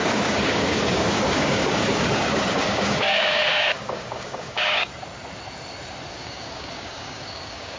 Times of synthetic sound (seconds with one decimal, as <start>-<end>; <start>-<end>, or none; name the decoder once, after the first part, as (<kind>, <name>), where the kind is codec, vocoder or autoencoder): 0.0-4.9 (codec, DAC); 6.1-7.8